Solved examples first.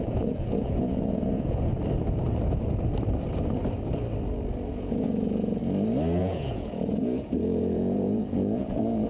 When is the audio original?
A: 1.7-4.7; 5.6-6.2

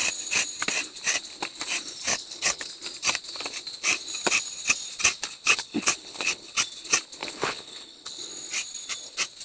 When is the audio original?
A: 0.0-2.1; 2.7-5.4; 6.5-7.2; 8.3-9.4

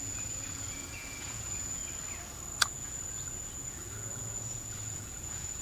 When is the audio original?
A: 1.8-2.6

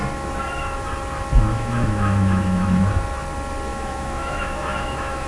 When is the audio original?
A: 0.0-1.5; 2.8-3.7

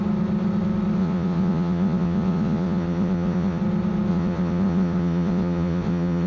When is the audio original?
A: 0.0-1.0; 3.6-4.1

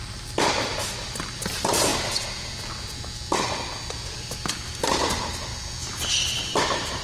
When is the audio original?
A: 1.9-4.2; 5.5-6.6

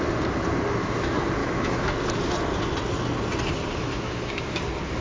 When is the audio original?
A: 0.0-1.4; 1.9-3.8; 4.6-5.0

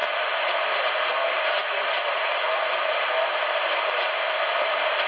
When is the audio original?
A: 0.0-5.1